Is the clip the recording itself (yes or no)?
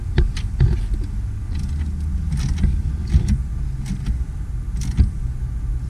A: yes